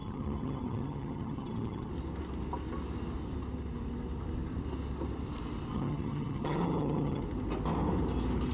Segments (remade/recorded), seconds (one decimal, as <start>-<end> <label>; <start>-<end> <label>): 0.0-1.9 remade; 1.9-5.7 recorded; 5.7-7.2 remade; 7.2-8.5 recorded